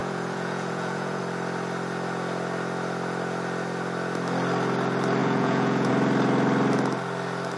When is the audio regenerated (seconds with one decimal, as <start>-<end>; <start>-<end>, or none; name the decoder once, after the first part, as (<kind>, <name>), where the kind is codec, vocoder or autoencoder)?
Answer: 0.0-1.2 (vocoder, Vocos); 5.2-5.9